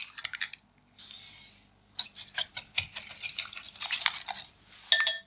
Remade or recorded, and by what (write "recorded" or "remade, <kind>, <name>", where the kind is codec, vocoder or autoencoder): recorded